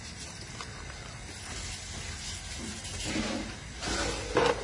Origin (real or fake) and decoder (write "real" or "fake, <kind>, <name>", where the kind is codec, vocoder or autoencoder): real